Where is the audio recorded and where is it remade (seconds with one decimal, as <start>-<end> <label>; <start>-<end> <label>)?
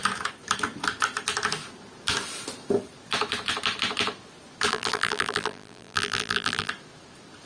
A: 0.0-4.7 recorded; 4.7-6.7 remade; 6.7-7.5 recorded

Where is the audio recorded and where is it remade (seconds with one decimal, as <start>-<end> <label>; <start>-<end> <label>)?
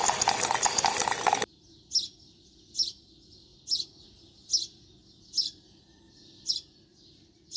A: 0.0-7.6 recorded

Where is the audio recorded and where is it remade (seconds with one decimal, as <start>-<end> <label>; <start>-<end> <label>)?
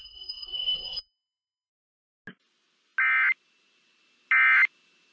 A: 0.0-1.7 remade; 1.7-5.1 recorded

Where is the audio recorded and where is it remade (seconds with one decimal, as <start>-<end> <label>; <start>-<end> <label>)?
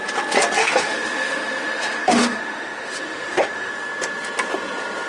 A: 0.0-0.6 recorded; 0.6-3.7 remade; 3.7-5.1 recorded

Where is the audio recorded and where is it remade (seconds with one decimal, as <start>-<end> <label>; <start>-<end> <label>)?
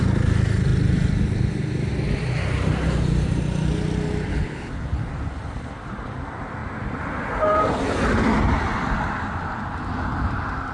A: 0.0-4.3 recorded; 4.3-5.1 remade; 5.1-10.7 recorded